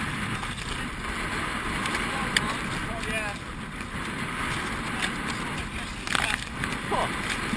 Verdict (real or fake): real